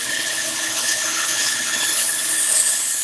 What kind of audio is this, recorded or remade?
remade